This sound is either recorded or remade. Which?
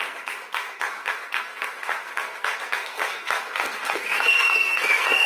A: remade